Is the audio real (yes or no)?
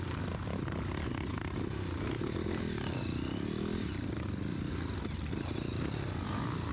yes